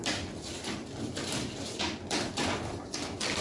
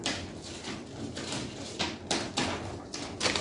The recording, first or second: second